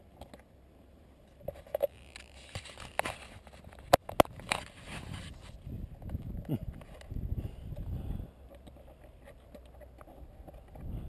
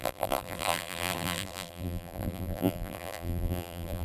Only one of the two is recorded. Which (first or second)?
first